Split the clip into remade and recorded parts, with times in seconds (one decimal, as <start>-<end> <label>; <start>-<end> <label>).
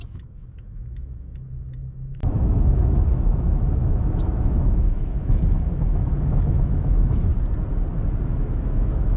0.0-7.3 remade; 7.3-8.2 recorded; 8.2-9.2 remade